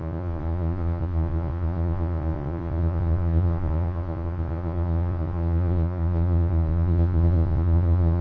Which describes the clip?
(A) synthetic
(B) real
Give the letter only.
A